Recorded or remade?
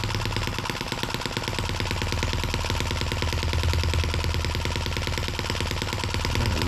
recorded